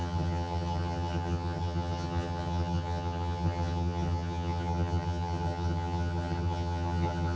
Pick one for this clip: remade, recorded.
remade